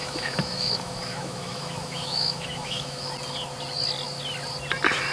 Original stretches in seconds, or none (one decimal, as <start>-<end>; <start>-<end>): 3.1-5.1